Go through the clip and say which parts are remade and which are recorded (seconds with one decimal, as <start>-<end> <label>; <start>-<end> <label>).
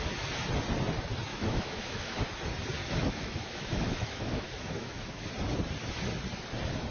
0.0-1.3 recorded; 1.3-2.2 remade; 2.2-2.8 recorded; 2.8-5.3 remade; 5.3-6.9 recorded